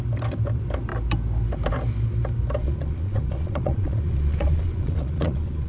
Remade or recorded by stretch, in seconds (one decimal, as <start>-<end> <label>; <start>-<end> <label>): 0.0-2.6 recorded; 2.6-5.7 remade